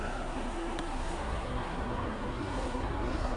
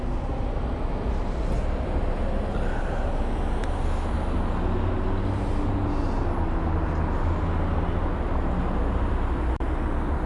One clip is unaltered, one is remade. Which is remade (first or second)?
first